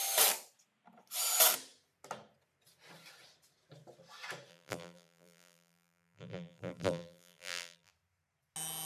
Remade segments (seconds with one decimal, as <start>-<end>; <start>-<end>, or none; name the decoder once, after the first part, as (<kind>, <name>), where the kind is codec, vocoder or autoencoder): 4.5-7.9 (vocoder, BigVGAN v2)